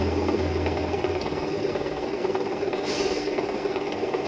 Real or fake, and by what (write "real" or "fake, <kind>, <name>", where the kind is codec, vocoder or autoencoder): fake, codec, SNAC